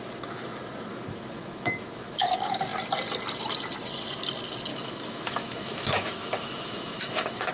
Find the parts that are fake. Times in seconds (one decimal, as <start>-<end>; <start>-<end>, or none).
0.9-2.2; 4.7-7.5